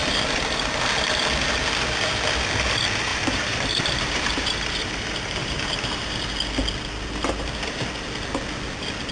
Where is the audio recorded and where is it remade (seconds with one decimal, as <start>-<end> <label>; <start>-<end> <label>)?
0.0-3.1 recorded; 3.1-6.2 remade; 6.2-9.1 recorded